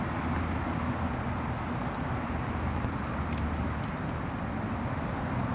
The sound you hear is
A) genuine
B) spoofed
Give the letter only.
A